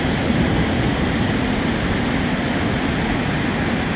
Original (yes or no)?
yes